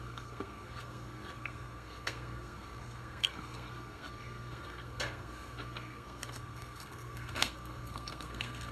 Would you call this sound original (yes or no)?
no